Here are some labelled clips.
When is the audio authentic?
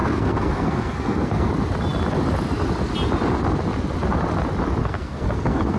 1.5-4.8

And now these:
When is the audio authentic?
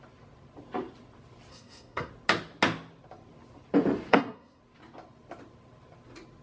0.0-1.5; 2.1-4.1; 4.6-6.4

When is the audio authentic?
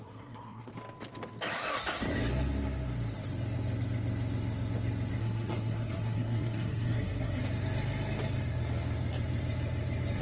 0.7-5.2; 7.4-10.2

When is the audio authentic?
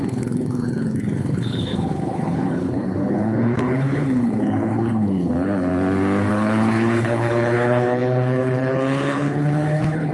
5.7-6.3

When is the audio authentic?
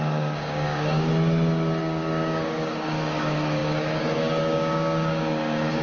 1.1-1.8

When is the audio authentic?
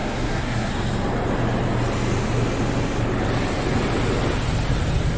0.7-5.2